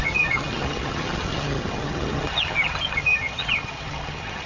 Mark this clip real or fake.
fake